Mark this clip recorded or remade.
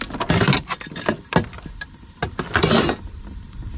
recorded